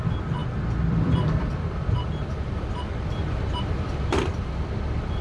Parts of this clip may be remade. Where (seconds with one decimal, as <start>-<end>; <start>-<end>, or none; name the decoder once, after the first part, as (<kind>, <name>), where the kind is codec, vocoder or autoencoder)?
0.0-5.2 (vocoder, BigVGAN v2)